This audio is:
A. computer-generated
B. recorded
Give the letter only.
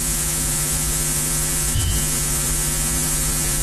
A